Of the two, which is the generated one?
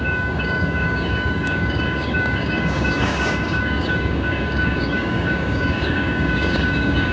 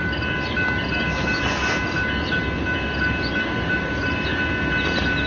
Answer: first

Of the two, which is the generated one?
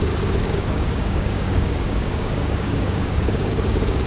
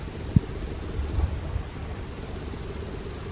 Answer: first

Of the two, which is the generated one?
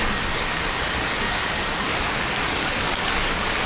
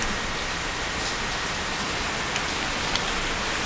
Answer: first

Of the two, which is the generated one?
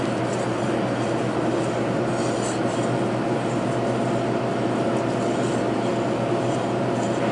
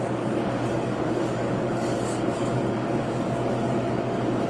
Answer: second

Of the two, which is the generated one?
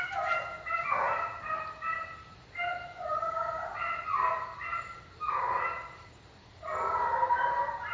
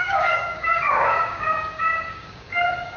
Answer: second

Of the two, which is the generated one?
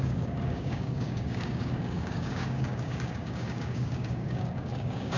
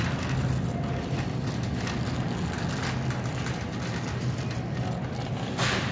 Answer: first